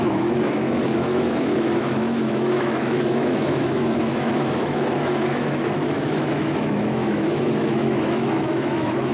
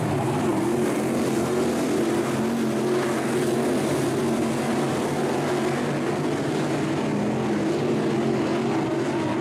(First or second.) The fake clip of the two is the first